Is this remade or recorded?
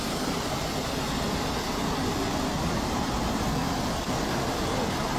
recorded